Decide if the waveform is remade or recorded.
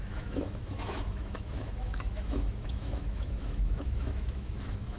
remade